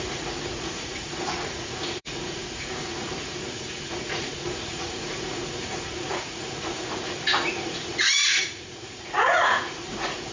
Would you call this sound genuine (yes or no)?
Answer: no